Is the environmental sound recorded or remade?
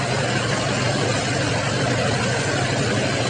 recorded